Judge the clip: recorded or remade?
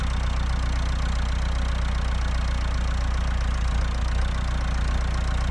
recorded